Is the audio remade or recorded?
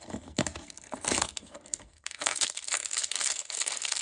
remade